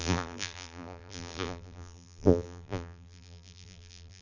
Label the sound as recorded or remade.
remade